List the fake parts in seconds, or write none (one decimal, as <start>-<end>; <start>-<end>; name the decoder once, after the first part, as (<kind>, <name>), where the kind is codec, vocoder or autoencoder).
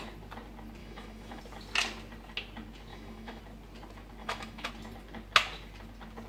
0.8-1.4 (autoencoder, DAC-VAE); 2.9-3.4; 4.2-4.7